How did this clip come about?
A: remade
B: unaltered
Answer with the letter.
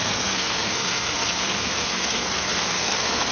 A